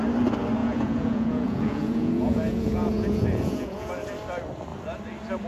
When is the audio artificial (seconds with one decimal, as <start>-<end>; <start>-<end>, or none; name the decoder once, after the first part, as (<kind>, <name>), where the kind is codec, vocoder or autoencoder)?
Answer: 0.6-3.9 (vocoder, Vocos)